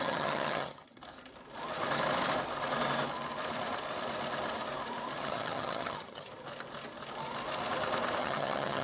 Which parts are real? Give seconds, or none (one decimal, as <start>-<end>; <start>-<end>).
1.0-5.2; 6.3-8.2